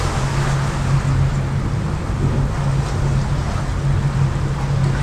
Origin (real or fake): real